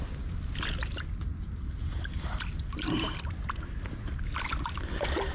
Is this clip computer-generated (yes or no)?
no